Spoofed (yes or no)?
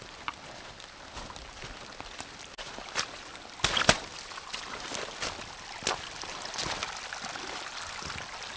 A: no